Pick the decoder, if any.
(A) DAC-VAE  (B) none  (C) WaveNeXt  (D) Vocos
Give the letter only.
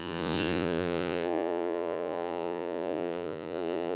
D